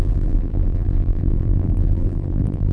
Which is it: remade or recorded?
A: remade